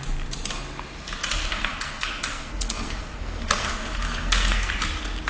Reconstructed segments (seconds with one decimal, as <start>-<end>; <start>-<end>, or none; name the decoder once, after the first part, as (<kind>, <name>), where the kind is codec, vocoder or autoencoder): 1.5-4.7 (codec, SNAC)